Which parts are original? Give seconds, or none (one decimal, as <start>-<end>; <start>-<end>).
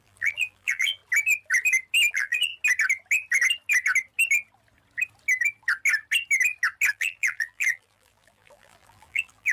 1.0-2.1; 2.5-6.9